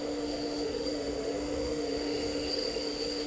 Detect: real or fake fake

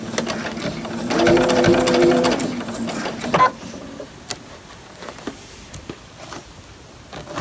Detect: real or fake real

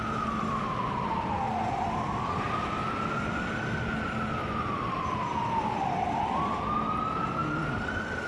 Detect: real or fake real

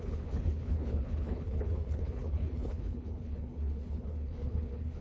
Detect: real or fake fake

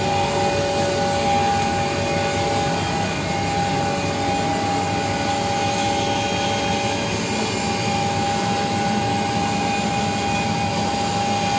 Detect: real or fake real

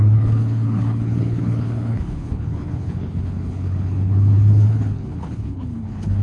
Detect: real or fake fake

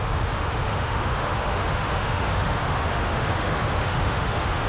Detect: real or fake fake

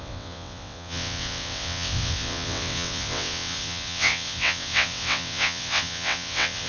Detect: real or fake fake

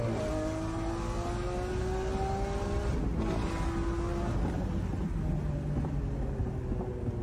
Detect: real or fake real